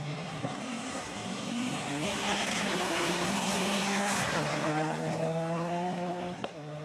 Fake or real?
fake